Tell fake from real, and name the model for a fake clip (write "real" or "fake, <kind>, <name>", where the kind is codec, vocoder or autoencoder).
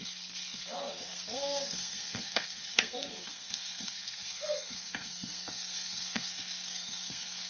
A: fake, codec, SNAC